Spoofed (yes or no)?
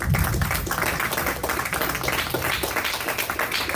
no